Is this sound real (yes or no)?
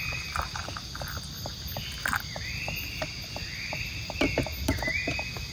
yes